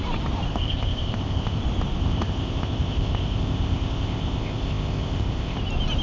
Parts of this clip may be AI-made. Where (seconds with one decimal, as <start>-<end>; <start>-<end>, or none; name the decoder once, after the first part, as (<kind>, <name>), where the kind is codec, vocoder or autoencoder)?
0.5-1.6 (codec, ZipCodec); 2.0-5.6